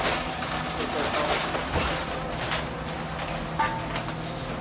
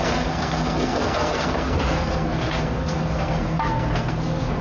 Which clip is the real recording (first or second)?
first